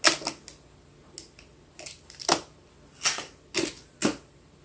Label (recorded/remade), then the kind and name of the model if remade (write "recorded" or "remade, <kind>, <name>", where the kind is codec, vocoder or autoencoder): recorded